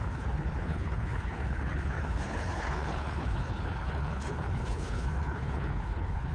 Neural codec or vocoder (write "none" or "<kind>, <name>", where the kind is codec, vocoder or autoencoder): codec, HILCodec